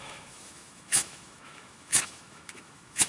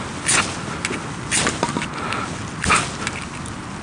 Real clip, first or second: second